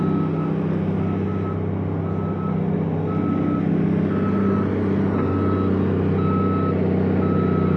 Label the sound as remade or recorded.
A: recorded